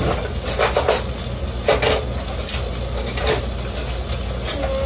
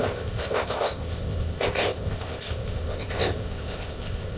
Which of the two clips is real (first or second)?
first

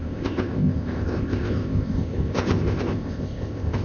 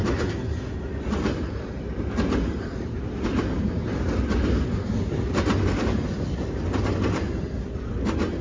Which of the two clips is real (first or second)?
second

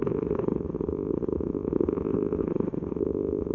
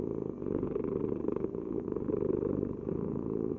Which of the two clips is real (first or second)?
second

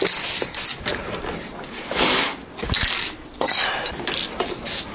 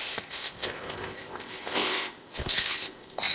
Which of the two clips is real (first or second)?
first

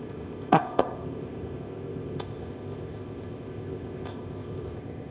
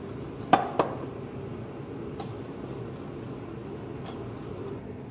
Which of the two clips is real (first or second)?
second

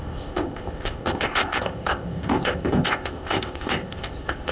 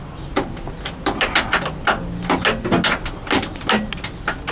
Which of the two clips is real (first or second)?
second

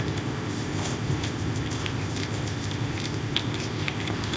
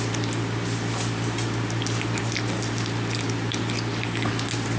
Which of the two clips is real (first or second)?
second